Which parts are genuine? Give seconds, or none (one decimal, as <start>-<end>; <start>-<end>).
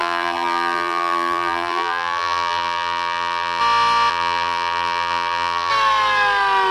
3.6-4.1; 5.7-6.7